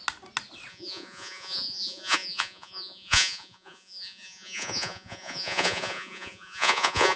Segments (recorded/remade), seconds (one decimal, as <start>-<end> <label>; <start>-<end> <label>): 0.0-0.7 recorded; 0.7-7.2 remade